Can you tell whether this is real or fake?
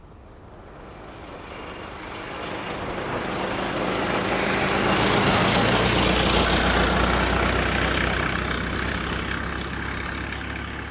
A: real